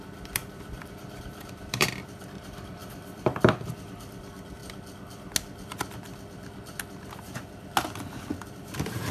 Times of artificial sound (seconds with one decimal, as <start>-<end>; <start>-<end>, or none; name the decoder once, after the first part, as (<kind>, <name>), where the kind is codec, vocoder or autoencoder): 0.0-4.6 (vocoder, BigVGAN v2); 8.5-9.1